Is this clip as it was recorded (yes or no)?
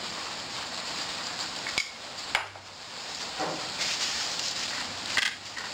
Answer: no